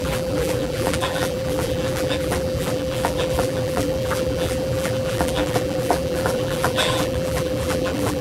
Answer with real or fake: fake